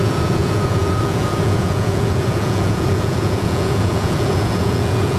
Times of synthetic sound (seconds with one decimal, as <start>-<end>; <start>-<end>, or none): 0.0-5.2